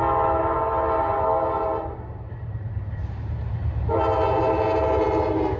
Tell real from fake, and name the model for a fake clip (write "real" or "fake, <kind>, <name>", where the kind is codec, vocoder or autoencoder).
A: real